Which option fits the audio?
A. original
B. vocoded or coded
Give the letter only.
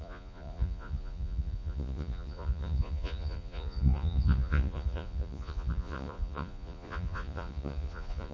B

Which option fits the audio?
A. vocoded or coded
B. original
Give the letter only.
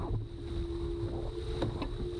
B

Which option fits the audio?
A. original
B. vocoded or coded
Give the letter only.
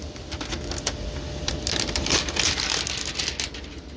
A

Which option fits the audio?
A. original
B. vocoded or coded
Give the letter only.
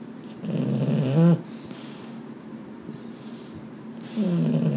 A